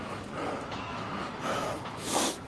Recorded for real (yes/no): no